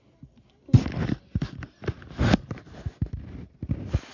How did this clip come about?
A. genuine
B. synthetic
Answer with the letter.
A